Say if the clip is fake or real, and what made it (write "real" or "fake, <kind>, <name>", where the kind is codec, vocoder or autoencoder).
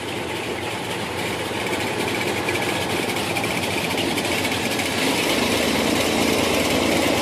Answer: real